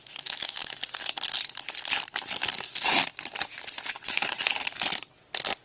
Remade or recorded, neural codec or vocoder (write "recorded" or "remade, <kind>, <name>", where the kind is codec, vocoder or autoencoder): recorded